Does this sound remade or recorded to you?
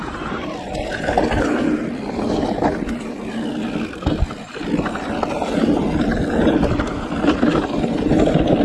recorded